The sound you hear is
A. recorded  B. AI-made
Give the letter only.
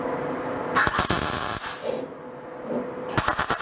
A